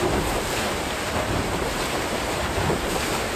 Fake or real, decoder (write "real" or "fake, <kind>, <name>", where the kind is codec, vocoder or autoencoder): fake, vocoder, BigVGAN v2